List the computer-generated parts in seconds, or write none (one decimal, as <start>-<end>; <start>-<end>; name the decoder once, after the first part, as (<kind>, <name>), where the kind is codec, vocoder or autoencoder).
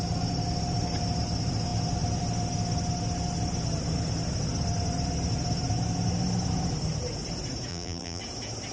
7.7-8.2 (vocoder, BigVGAN v2)